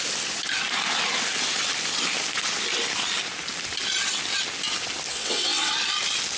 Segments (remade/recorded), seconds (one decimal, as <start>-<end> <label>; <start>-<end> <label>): 0.0-5.1 recorded; 5.1-5.7 remade; 5.7-6.4 recorded